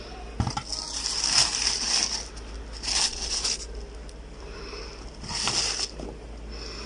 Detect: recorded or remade recorded